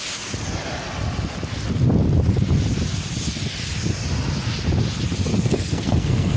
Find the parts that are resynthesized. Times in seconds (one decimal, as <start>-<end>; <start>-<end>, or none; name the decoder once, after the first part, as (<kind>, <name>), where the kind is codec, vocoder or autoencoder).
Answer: 5.3-6.4 (codec, SNAC)